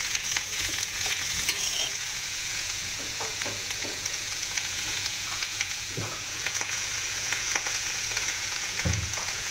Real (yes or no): no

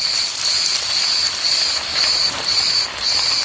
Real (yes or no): yes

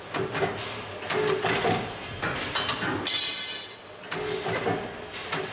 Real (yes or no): yes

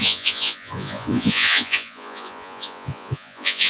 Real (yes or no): no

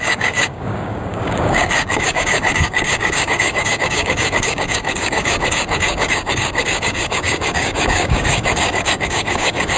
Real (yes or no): no